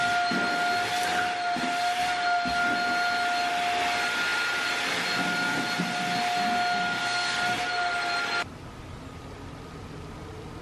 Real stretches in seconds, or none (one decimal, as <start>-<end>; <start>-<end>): 0.0-10.6